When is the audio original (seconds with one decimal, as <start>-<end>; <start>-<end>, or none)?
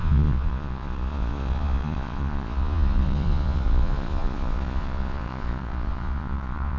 none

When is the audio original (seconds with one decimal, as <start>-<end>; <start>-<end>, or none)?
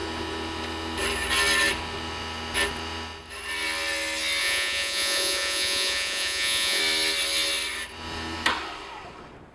0.0-4.4; 6.8-9.5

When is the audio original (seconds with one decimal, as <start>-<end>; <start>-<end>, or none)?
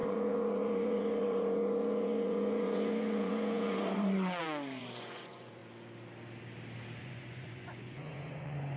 5.6-7.0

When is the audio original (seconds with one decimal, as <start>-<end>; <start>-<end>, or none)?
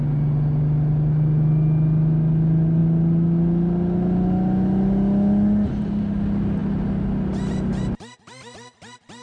0.0-9.2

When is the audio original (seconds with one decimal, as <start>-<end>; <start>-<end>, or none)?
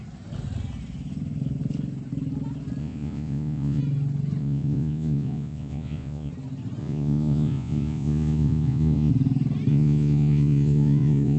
0.0-2.8; 3.8-4.4; 6.3-6.8; 9.1-9.7